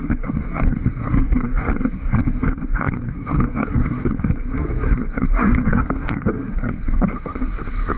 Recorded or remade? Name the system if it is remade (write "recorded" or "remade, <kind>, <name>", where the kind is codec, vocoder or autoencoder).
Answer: remade, codec, SNAC